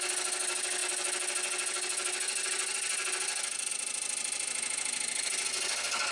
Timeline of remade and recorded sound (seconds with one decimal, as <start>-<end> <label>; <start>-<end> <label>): 0.0-6.1 recorded